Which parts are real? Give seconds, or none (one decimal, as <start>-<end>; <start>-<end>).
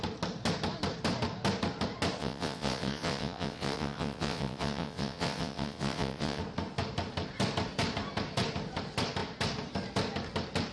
0.0-2.2; 6.4-10.7